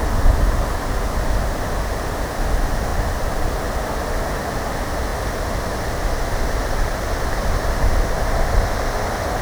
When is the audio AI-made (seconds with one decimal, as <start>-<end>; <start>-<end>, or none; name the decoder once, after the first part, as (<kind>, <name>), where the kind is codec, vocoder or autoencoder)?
2.9-3.5 (vocoder, BigVGAN v2)